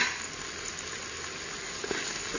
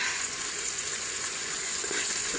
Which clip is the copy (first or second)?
second